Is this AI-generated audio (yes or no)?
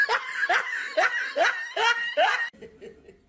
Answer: no